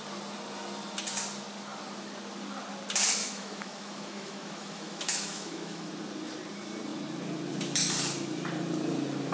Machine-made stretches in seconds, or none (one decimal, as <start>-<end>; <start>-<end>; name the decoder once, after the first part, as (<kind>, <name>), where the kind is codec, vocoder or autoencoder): 3.2-5.9 (autoencoder, DAC-VAE)